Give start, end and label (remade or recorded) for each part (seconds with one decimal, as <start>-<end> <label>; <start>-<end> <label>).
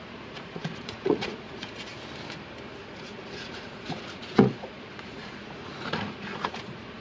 0.0-1.9 remade; 1.9-2.8 recorded; 2.8-7.0 remade